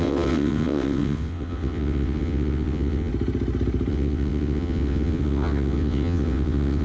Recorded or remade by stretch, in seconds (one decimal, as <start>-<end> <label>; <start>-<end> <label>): 0.0-3.1 remade; 3.1-3.9 recorded; 3.9-6.8 remade